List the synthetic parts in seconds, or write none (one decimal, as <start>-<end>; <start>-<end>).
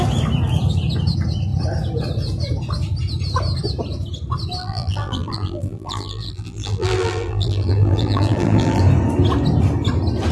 4.6-8.8